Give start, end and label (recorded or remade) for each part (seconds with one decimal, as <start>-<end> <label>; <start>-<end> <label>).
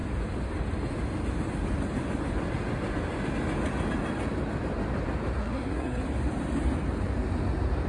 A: 0.0-5.4 recorded; 5.4-6.0 remade; 6.0-7.9 recorded